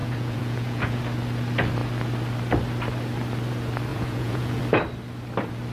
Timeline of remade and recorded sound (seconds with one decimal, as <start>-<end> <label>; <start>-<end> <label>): 0.0-1.0 remade; 1.0-3.9 recorded; 3.9-4.6 remade; 4.6-5.7 recorded